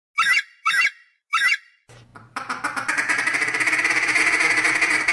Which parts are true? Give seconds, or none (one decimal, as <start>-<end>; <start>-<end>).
0.0-5.1